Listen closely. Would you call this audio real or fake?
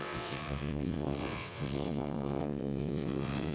fake